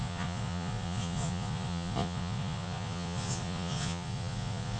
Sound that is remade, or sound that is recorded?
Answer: remade